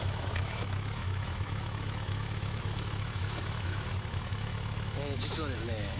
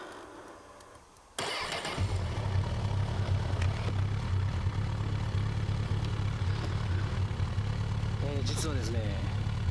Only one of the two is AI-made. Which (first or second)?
first